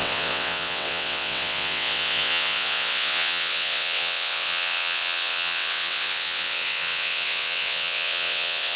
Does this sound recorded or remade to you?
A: remade